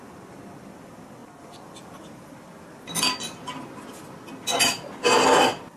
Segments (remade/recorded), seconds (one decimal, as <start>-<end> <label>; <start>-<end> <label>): 0.0-5.8 recorded